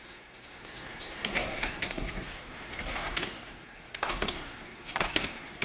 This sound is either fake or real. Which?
fake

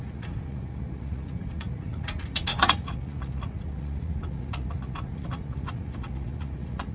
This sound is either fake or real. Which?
fake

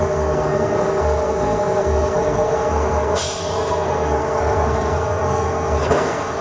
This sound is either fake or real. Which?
fake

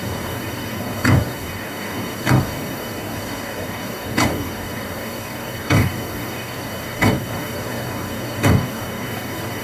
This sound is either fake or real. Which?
fake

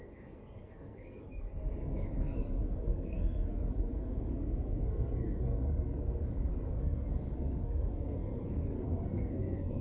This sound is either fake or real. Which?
fake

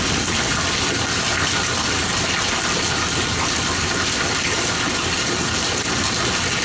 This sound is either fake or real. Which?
real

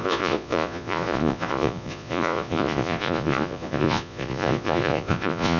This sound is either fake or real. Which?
fake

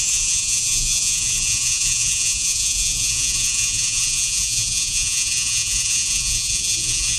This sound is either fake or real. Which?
fake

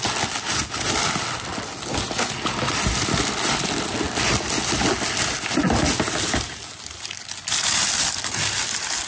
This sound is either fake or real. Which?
real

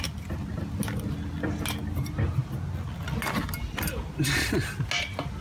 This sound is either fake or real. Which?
real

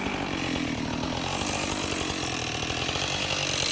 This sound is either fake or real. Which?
real